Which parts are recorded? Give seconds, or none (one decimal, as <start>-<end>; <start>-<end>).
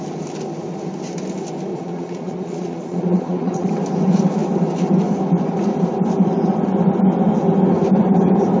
0.0-1.7; 3.7-8.6